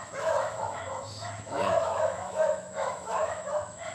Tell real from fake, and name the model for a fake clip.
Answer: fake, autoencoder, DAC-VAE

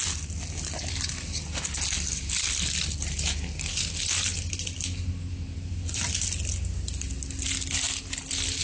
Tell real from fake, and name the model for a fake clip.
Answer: real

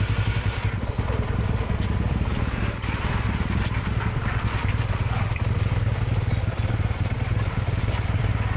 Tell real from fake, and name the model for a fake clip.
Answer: real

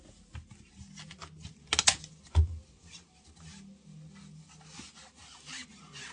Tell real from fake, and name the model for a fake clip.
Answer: real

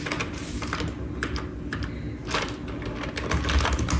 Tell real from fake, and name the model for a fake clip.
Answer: real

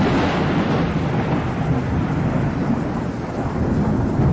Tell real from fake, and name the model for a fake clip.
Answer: real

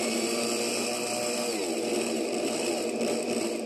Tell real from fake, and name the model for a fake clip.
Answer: real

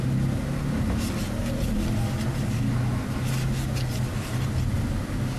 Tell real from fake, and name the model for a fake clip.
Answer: real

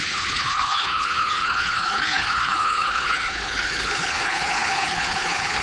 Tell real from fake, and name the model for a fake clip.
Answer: fake, codec, HILCodec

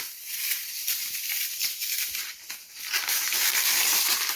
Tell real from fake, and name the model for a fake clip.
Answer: fake, vocoder, BigVGAN v2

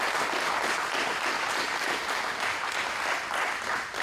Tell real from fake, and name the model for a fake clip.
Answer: real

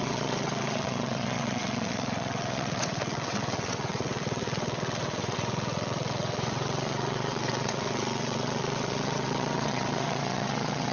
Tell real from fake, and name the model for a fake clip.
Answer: fake, vocoder, WaveNeXt